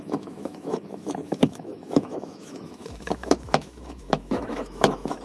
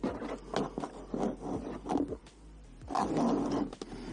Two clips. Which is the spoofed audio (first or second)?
first